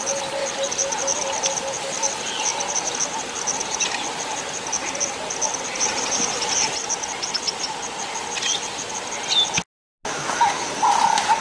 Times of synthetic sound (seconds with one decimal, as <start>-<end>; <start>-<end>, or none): none